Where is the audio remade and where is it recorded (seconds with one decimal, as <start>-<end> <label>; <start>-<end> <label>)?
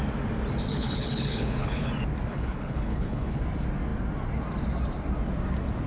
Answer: 0.0-0.7 recorded; 0.7-1.9 remade; 1.9-2.3 recorded; 2.3-3.4 remade; 3.4-5.9 recorded